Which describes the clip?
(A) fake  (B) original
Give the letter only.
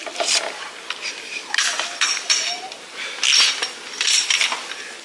B